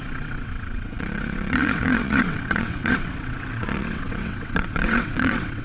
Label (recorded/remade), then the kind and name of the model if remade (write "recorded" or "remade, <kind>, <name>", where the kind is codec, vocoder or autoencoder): remade, vocoder, WaveNeXt